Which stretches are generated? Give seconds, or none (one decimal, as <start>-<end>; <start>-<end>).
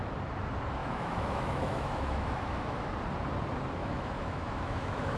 0.8-2.9; 3.8-5.2